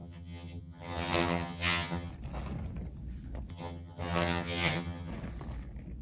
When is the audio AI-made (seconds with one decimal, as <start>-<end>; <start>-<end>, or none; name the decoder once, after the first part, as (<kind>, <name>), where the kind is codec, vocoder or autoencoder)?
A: 0.0-2.1 (vocoder, HiFi-GAN); 3.5-5.1